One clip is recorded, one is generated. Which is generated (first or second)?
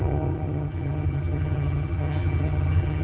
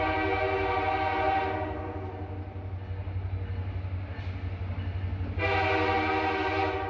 first